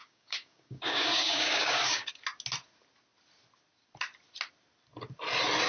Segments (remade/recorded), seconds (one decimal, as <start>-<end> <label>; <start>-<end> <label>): 0.0-2.1 remade; 2.1-5.7 recorded